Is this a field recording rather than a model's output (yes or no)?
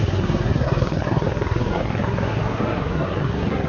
no